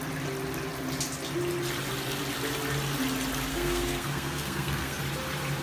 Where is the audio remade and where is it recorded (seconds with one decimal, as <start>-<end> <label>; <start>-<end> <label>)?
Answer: 0.0-3.5 recorded; 3.5-5.0 remade; 5.0-5.6 recorded